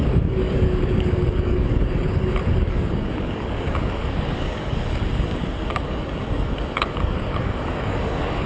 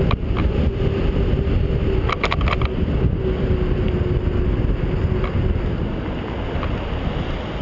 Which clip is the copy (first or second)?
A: first